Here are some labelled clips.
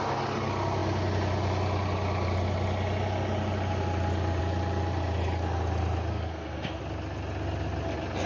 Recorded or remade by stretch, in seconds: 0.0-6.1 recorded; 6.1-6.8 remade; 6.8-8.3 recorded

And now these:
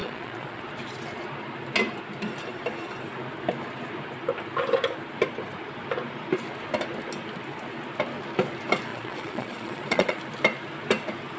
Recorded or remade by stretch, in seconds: 0.0-0.6 remade; 0.6-8.9 recorded; 8.9-10.2 remade; 10.2-11.4 recorded

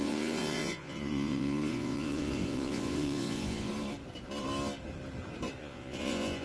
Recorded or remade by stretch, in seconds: 0.0-3.7 remade; 3.7-5.6 recorded; 5.6-6.4 remade